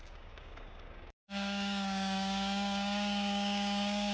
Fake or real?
fake